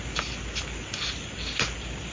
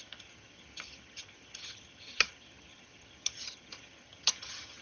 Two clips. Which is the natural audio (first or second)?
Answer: first